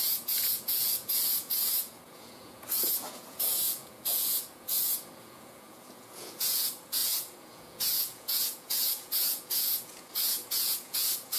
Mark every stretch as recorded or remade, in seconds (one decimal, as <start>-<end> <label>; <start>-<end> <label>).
0.0-11.4 remade